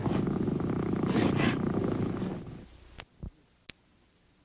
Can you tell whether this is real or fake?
real